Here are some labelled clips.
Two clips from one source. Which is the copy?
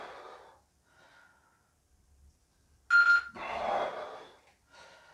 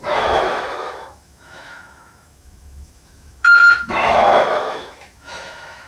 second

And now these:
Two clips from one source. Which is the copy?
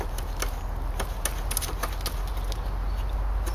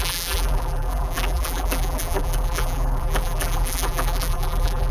second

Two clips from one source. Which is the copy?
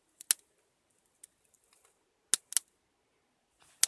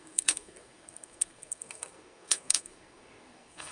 second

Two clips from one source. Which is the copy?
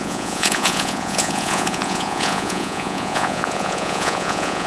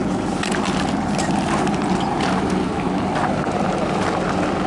first